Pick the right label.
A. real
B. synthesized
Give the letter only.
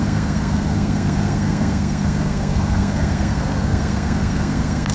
B